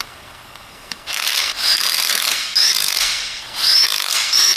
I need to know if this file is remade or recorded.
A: remade